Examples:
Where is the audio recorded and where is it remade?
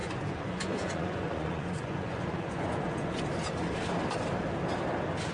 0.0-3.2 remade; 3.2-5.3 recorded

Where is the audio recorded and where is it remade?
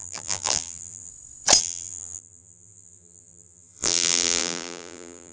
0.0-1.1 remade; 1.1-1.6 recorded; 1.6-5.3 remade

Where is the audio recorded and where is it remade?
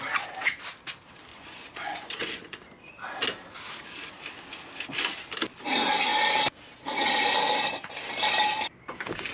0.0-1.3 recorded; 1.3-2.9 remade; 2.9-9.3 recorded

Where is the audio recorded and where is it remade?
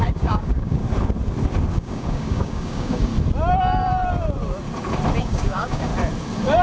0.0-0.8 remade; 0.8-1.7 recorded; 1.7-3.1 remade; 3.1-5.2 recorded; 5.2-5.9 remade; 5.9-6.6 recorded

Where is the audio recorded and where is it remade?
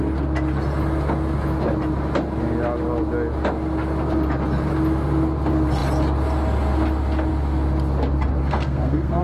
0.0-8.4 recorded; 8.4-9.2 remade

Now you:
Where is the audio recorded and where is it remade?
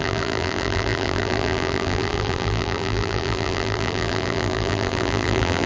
0.0-5.7 remade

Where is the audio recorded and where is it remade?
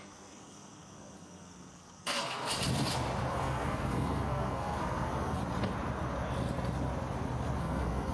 0.0-2.5 remade; 2.5-3.3 recorded; 3.3-5.4 remade; 5.4-7.6 recorded; 7.6-8.1 remade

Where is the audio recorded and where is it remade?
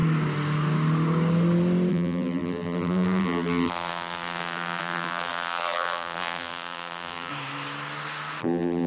0.0-1.9 recorded; 1.9-7.3 remade; 7.3-8.4 recorded; 8.4-8.9 remade